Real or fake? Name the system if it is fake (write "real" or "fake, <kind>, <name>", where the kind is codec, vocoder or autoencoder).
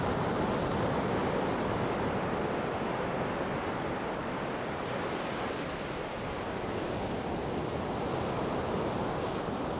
real